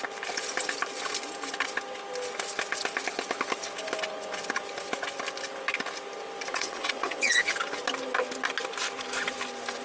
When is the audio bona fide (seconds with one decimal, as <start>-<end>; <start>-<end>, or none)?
0.0-6.5; 7.4-9.8